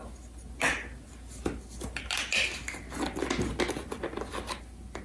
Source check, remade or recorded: recorded